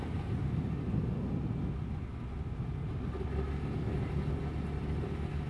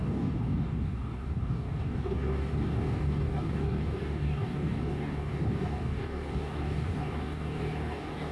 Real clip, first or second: first